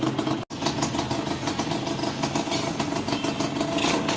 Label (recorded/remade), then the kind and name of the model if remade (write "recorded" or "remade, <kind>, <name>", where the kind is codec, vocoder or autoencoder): recorded